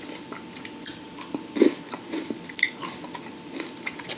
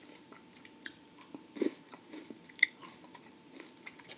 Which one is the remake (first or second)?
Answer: second